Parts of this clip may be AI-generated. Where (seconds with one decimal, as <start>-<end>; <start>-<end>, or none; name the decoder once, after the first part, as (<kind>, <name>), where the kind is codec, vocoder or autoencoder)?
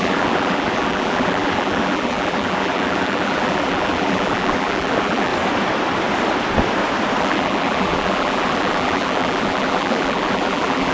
0.0-5.3 (vocoder, BigVGAN v2); 7.2-10.9